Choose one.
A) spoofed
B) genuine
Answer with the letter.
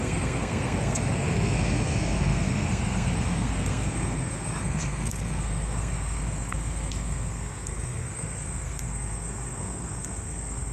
A